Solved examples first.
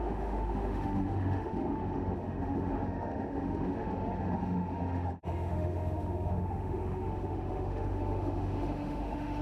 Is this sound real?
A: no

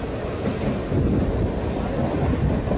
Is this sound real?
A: yes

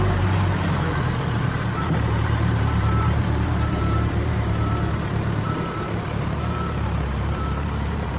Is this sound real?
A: no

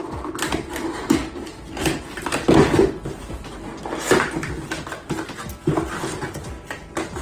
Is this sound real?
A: yes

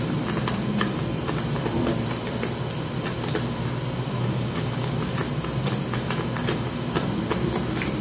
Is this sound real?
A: yes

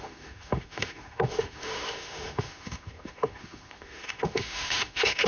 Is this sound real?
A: no